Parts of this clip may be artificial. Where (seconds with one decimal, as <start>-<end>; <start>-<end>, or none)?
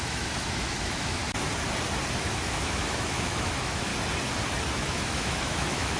0.0-1.2; 2.2-3.9; 4.8-6.0